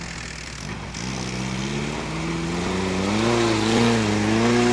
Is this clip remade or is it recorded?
recorded